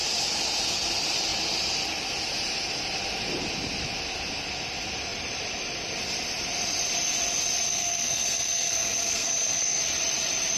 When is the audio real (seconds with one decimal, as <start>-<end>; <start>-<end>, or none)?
0.0-7.7; 9.8-10.6